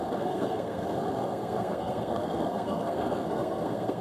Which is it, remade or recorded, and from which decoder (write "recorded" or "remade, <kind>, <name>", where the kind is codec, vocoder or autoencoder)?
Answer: remade, codec, SNAC